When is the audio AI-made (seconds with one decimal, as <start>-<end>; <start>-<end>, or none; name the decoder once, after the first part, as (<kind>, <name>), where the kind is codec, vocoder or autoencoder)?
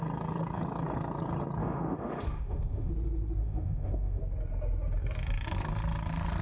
1.6-2.9 (autoencoder, DAC-VAE); 3.4-4.2